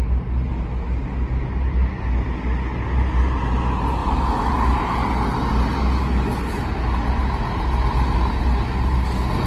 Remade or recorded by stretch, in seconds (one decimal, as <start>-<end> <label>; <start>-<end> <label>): 0.0-4.0 recorded; 4.0-4.5 remade; 4.5-9.5 recorded